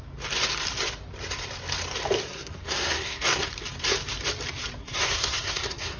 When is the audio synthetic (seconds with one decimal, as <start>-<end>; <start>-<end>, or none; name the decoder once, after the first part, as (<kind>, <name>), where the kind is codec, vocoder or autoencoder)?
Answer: 2.2-3.5 (codec, SNAC); 4.8-6.0